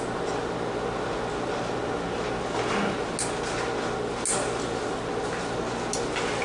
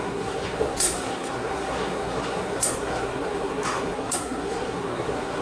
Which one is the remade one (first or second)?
second